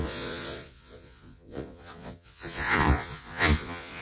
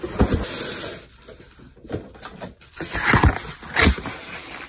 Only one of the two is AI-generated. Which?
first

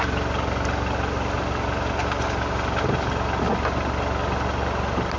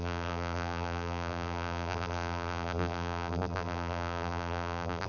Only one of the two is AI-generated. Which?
second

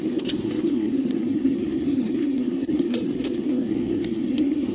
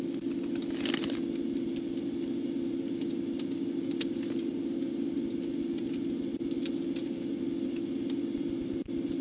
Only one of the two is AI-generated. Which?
first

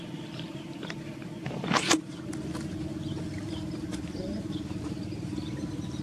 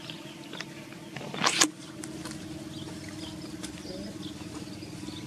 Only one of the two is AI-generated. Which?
first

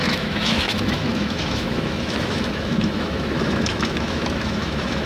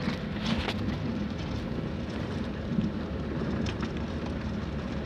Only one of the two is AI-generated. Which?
first